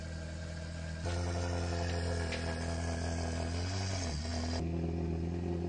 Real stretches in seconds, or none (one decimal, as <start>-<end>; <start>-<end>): 0.0-5.7